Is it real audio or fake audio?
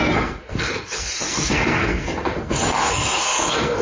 fake